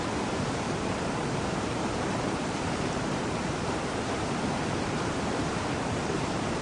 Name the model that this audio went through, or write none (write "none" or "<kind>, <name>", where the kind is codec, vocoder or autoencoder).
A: vocoder, BigVGAN v2